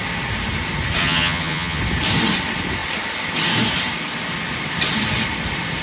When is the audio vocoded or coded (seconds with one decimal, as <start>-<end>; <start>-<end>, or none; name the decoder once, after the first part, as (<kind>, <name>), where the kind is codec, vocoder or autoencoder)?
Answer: 1.0-1.8 (vocoder, HiFi-GAN)